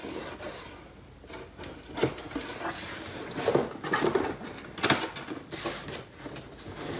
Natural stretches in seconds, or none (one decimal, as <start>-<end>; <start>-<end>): 0.0-7.0

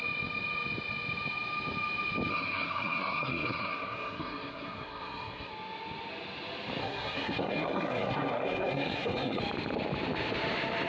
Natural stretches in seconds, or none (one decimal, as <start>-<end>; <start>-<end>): 0.0-2.3; 5.5-6.8; 9.4-10.9